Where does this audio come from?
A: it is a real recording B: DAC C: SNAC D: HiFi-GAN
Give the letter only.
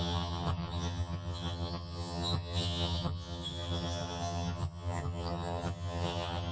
D